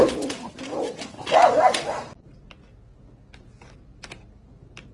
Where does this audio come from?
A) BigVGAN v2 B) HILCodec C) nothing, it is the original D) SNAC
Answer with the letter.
C